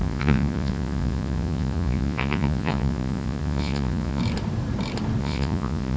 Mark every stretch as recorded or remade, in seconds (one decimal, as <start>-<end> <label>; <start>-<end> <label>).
0.0-4.2 remade; 4.2-5.2 recorded; 5.2-6.0 remade